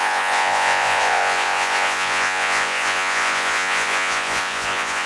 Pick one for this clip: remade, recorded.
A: remade